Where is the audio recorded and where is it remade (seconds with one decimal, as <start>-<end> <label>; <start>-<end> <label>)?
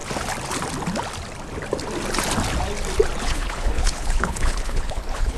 0.0-3.2 recorded; 3.2-5.4 remade